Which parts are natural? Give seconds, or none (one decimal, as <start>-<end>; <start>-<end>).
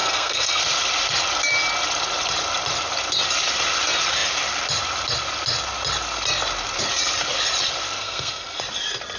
0.6-8.0; 8.6-9.2